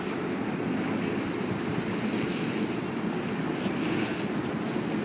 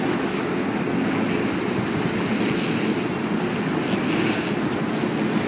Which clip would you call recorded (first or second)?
second